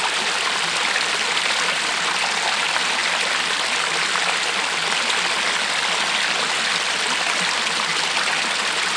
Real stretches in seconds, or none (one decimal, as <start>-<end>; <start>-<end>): 0.0-9.0